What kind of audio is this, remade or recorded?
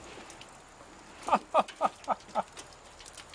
recorded